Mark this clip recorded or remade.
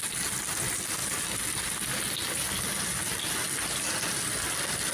remade